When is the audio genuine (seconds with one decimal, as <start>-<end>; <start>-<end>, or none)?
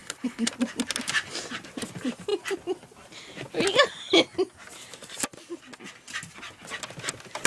0.5-7.5